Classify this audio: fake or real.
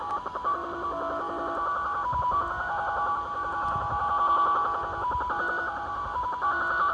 real